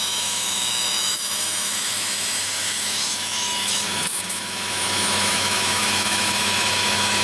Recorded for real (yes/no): no